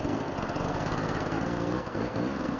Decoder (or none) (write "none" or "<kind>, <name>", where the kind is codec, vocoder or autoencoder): codec, SNAC